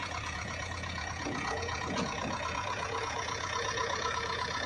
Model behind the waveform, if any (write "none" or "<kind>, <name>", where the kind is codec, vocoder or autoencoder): vocoder, Vocos